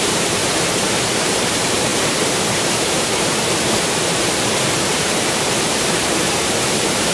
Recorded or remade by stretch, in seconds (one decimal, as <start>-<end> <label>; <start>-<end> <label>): 0.0-0.4 remade; 0.4-1.0 recorded; 1.0-7.1 remade